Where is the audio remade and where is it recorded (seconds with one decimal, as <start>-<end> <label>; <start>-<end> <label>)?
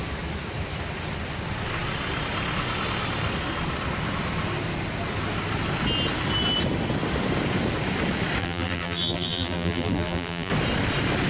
0.0-8.4 recorded; 8.4-10.5 remade; 10.5-11.3 recorded